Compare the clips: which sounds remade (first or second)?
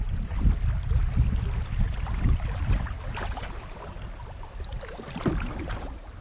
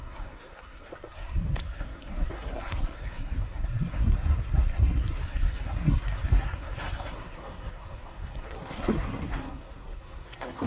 second